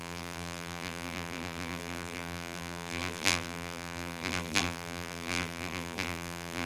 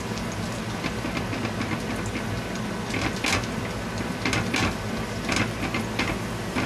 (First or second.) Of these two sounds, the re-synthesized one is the first